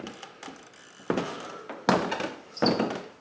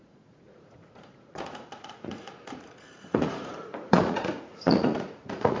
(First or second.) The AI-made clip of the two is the second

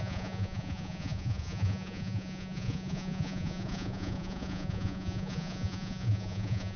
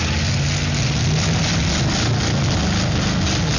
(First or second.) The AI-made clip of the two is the first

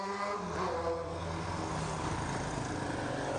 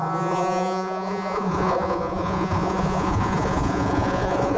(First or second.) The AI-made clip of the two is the second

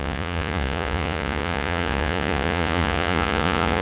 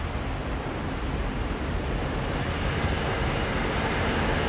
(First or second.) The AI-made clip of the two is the first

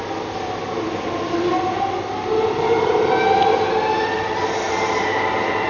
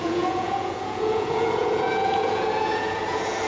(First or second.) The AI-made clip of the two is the second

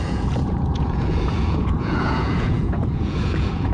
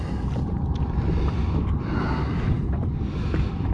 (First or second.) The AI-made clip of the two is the first